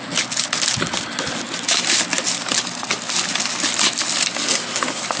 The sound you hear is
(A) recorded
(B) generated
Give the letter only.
A